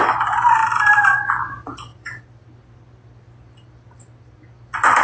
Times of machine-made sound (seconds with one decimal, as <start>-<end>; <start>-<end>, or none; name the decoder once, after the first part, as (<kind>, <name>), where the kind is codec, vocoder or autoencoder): none